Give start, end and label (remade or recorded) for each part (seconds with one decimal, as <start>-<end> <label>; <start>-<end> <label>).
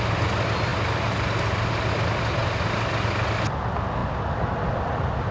0.0-5.3 recorded